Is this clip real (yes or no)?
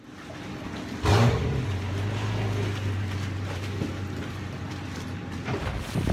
yes